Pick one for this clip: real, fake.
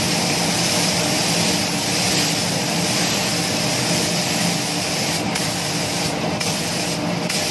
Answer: fake